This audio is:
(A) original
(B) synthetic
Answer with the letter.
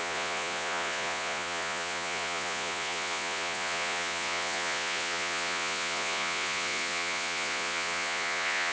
B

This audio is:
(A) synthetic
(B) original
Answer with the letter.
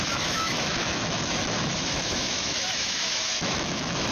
A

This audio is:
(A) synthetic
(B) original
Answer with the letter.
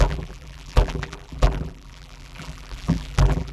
A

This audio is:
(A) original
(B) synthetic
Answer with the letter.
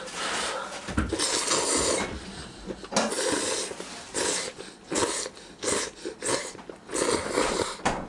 A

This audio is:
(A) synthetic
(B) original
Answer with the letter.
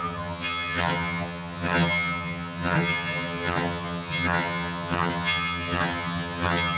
A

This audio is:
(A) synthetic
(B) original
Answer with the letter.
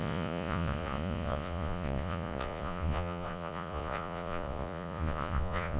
A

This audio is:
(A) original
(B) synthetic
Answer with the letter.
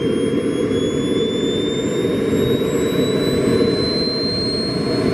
A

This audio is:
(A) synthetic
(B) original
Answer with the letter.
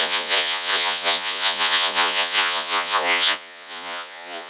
A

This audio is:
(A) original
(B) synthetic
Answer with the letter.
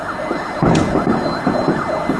A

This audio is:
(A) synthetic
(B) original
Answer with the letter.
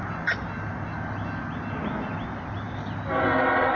B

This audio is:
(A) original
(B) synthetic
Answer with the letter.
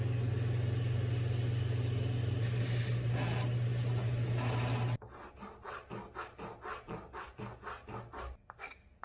A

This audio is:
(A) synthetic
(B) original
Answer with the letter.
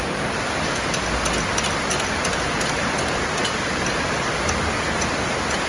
B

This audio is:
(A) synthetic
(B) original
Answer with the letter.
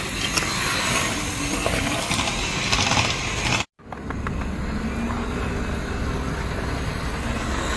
B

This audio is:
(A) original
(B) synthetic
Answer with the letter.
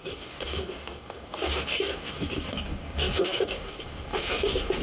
B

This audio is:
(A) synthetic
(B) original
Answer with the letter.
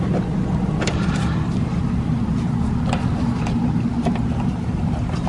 B